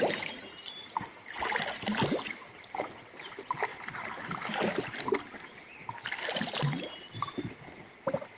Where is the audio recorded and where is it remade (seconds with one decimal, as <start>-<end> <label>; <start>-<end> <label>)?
0.0-8.4 recorded